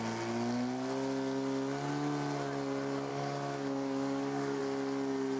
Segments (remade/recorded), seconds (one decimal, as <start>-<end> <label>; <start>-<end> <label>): 0.0-3.1 recorded; 3.1-4.6 remade; 4.6-5.4 recorded